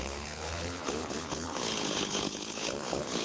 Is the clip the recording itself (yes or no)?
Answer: no